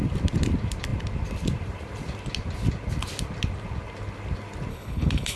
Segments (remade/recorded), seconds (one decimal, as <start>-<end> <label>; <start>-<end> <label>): 0.0-4.7 recorded; 4.7-5.4 remade